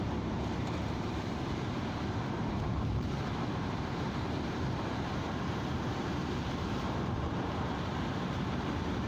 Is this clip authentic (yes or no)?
no